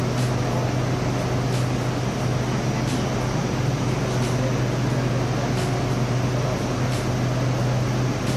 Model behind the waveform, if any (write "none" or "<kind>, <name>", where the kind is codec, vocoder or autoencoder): none